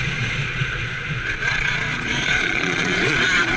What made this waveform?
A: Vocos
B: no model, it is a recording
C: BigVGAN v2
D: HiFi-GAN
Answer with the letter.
A